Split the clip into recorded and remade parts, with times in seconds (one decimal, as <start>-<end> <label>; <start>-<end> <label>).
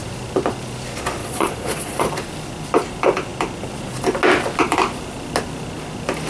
0.0-1.2 recorded; 1.2-2.1 remade; 2.1-6.3 recorded